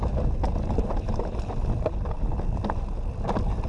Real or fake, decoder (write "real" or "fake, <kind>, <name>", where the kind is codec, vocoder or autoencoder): real